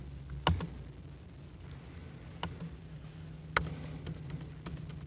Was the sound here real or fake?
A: real